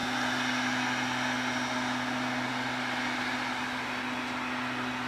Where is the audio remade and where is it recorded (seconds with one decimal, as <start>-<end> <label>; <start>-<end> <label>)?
0.0-5.1 recorded

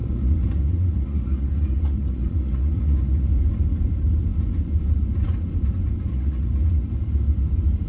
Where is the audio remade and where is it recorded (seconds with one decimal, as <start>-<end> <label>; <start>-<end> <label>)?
0.0-3.3 remade; 3.3-6.1 recorded; 6.1-6.9 remade; 6.9-7.9 recorded

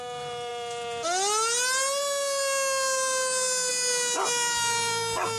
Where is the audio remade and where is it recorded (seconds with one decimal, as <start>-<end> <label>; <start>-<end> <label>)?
0.0-5.4 recorded

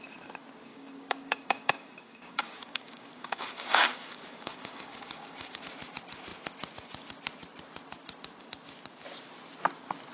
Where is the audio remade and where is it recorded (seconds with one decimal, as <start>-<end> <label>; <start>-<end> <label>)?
0.0-0.7 recorded; 0.7-5.6 remade; 5.6-10.1 recorded

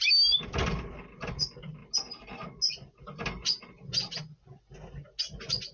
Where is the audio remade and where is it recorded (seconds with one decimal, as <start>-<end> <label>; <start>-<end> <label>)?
0.0-5.7 recorded

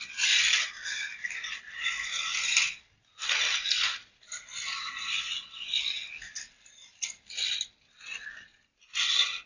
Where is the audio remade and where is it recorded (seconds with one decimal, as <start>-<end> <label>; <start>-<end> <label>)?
0.0-9.5 recorded